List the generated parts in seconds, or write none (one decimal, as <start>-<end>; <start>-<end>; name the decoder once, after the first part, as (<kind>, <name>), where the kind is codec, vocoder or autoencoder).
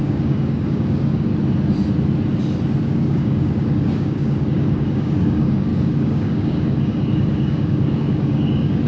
0.0-1.3 (codec, DAC); 2.8-8.9